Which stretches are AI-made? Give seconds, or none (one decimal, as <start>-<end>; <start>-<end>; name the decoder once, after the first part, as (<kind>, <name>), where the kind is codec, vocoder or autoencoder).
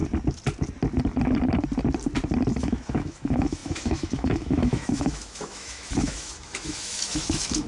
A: 2.6-7.7 (autoencoder, DAC-VAE)